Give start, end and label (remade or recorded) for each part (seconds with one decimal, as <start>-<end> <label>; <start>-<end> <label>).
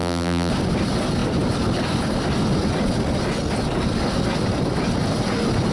0.0-0.5 remade; 0.5-5.7 recorded